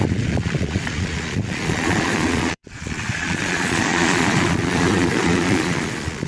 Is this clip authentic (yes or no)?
no